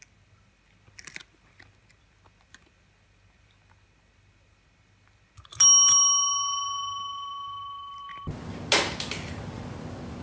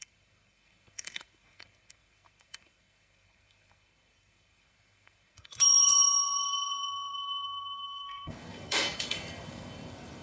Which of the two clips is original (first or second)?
first